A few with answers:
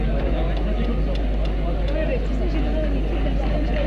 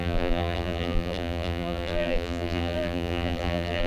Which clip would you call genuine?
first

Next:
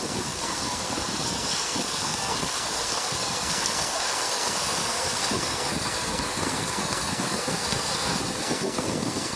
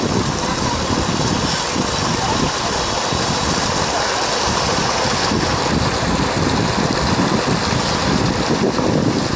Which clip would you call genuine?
second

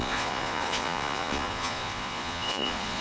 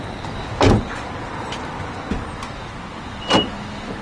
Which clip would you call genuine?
second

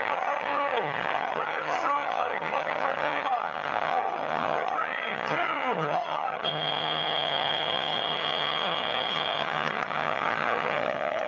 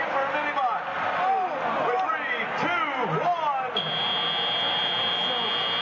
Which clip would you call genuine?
second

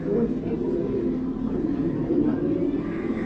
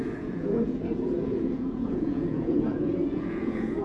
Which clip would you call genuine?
first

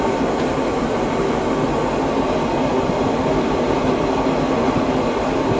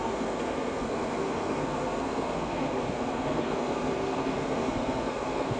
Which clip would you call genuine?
first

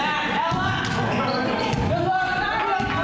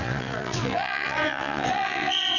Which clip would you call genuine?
first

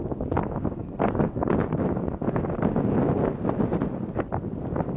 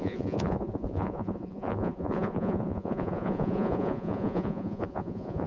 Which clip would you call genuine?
first